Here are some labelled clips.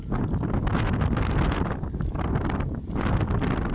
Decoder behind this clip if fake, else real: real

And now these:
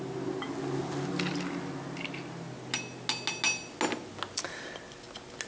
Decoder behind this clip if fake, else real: real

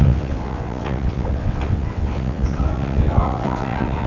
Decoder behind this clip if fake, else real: fake, vocoder, WaveNeXt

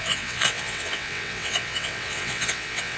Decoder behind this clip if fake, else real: fake, vocoder, WaveNeXt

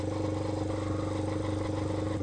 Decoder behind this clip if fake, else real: real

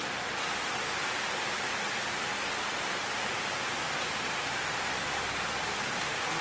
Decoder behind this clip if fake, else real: real